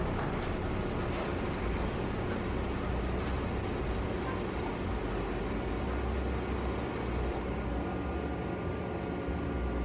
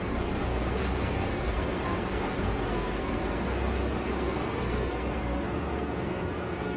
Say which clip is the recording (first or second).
first